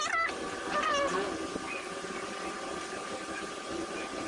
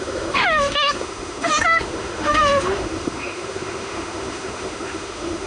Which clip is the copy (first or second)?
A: second